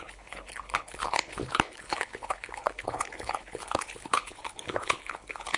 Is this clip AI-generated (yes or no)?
yes